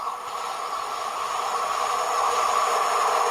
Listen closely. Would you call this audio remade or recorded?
recorded